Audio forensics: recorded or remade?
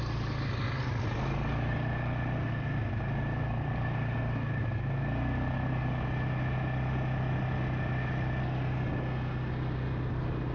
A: recorded